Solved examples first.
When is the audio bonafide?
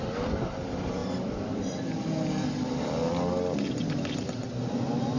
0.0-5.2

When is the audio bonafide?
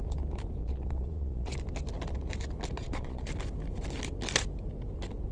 0.0-0.6; 1.5-2.8; 3.3-5.3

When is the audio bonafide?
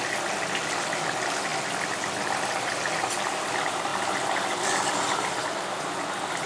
0.0-6.5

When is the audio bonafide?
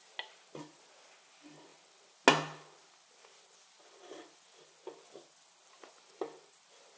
0.0-7.0